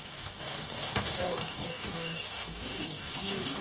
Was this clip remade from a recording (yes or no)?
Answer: yes